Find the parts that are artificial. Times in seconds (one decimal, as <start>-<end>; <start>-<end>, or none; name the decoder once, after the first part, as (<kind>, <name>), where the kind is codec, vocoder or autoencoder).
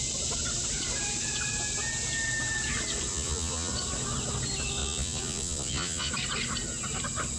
3.1-3.7 (vocoder, Vocos); 4.8-6.1